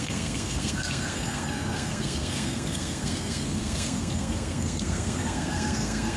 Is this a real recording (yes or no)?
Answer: no